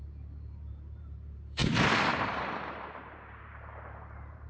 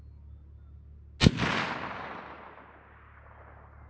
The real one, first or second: second